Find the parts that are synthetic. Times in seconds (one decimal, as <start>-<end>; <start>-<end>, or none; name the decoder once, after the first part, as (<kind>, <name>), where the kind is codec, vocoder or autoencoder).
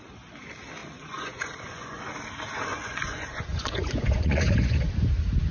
0.8-2.0 (vocoder, Vocos); 2.7-4.9